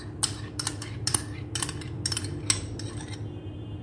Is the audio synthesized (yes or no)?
no